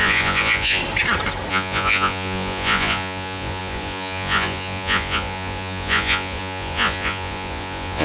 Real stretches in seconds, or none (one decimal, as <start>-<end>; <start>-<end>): 0.8-1.5